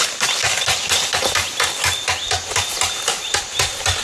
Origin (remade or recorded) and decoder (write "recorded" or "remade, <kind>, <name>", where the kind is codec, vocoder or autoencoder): recorded